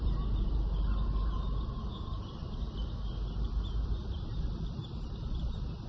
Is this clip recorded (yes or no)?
yes